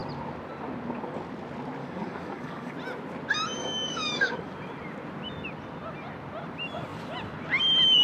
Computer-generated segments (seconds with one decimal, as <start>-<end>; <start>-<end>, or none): 1.8-2.7; 3.6-4.5